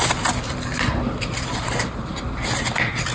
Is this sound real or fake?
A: real